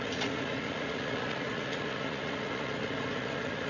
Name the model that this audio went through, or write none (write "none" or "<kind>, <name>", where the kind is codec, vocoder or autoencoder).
vocoder, Vocos